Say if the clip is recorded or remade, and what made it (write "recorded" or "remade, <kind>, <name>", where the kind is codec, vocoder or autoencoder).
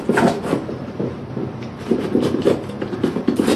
remade, vocoder, BigVGAN v2